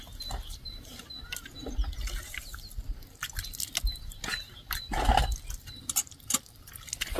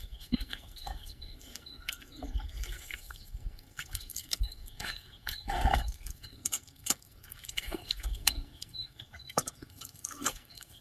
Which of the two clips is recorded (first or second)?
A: first